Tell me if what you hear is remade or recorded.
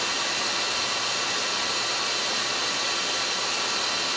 recorded